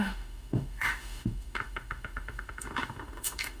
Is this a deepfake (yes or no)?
yes